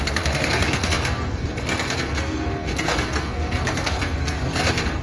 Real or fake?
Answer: fake